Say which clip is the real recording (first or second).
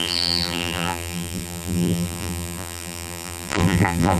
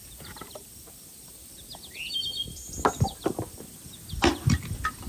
second